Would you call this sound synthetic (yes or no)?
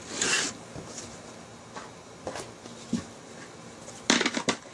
no